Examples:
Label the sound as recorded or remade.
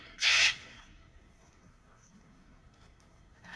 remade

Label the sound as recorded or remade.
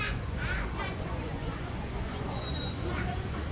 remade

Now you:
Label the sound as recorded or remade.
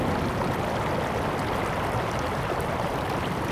recorded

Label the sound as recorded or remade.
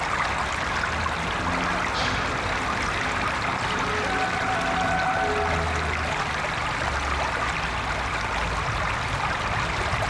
recorded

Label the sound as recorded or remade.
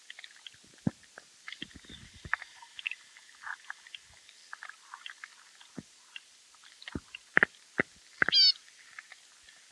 recorded